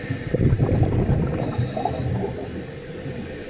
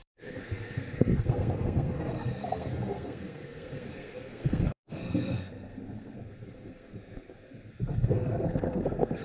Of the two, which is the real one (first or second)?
first